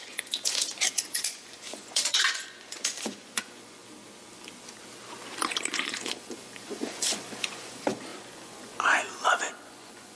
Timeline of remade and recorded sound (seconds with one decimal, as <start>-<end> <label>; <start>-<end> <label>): 0.0-3.8 remade; 3.8-5.4 recorded; 5.4-10.2 remade